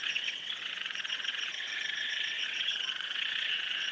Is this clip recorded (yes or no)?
no